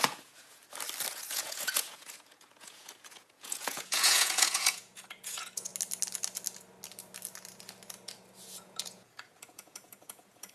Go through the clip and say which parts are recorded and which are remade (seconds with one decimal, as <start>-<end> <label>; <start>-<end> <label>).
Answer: 0.0-0.6 remade; 0.6-1.1 recorded; 1.1-5.7 remade; 5.7-8.4 recorded; 8.4-10.5 remade